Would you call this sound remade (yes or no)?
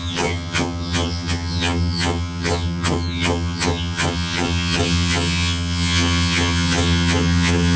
yes